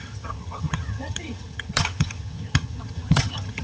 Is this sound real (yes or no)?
no